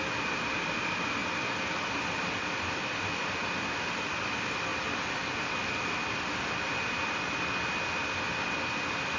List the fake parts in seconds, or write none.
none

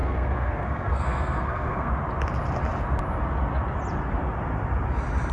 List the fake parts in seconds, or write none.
0.0-1.9 (codec, SNAC)